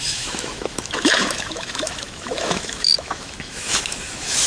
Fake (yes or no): yes